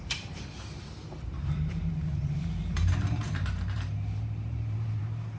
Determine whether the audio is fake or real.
fake